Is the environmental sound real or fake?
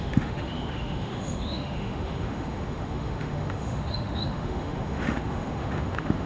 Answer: fake